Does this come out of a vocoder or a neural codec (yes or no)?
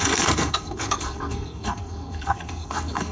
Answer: yes